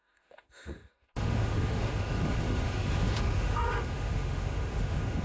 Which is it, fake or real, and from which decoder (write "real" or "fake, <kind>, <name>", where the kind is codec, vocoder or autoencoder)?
fake, autoencoder, DAC-VAE